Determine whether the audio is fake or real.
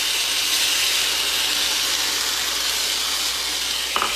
real